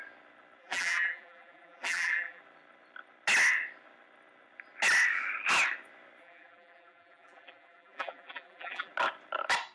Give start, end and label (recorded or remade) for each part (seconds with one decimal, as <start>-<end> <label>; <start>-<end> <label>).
0.0-0.6 recorded; 0.6-2.4 remade; 2.4-6.2 recorded; 6.2-8.9 remade; 8.9-9.7 recorded